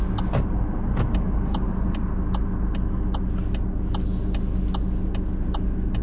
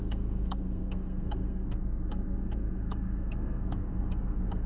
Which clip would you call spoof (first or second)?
second